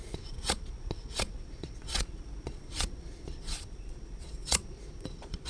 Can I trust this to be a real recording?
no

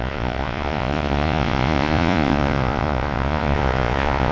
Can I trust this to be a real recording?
no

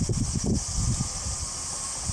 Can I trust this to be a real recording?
no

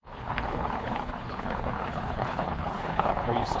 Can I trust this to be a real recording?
no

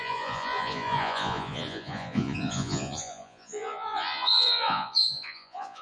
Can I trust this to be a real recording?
no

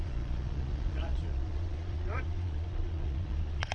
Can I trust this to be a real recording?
no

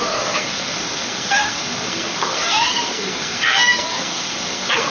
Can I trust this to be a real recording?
no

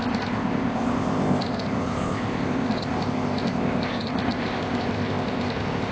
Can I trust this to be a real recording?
no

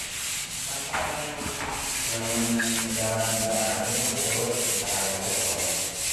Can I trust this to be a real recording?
yes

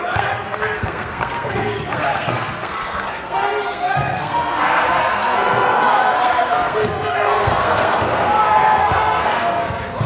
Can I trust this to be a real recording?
no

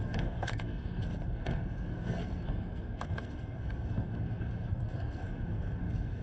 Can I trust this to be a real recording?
no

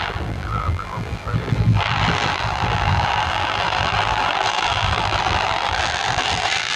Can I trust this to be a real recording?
no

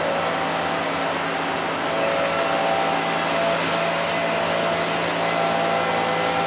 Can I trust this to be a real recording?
yes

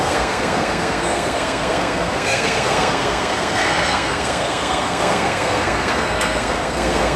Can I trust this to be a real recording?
no